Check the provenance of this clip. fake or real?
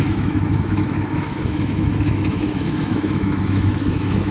fake